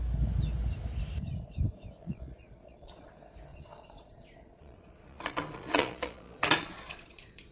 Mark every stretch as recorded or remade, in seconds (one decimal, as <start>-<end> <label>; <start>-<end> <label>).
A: 0.0-2.0 recorded; 2.0-3.1 remade; 3.1-3.5 recorded; 3.5-7.5 remade